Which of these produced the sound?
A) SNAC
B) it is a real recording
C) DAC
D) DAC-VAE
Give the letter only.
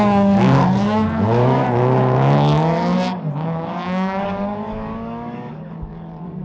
C